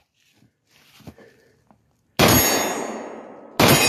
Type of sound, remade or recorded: recorded